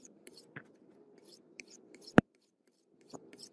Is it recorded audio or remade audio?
remade